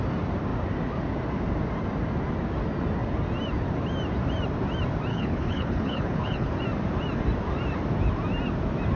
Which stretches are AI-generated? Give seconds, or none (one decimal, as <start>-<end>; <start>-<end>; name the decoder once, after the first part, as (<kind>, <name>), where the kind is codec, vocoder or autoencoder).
5.1-6.5 (codec, HILCodec)